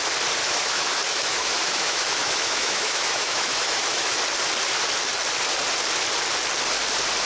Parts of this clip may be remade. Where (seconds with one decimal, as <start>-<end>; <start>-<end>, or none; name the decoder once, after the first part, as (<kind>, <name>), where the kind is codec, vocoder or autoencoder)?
0.4-4.2 (autoencoder, DAC-VAE)